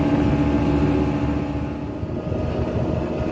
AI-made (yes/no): no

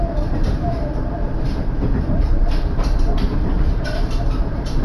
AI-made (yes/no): yes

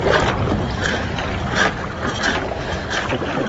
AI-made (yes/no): no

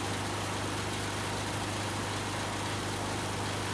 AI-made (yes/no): no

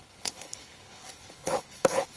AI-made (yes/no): yes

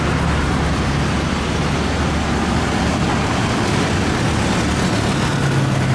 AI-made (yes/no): no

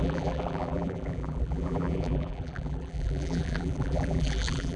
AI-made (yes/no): yes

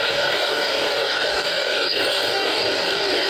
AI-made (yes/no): yes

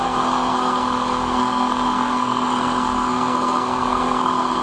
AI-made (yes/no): yes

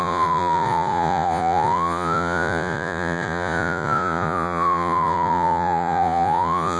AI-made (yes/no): yes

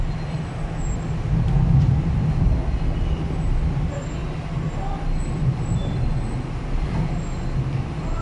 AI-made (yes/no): no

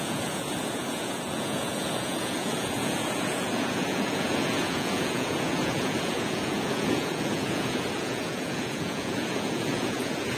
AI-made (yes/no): yes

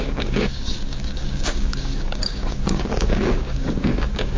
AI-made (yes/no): yes